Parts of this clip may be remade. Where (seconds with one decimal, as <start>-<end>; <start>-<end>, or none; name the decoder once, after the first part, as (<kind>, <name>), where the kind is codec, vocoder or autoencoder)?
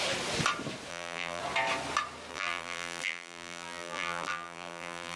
0.9-1.4 (vocoder, BigVGAN v2); 2.3-5.2